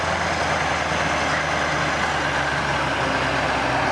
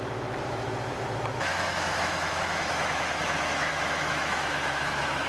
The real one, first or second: first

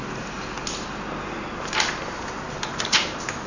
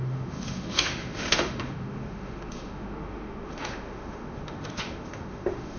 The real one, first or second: first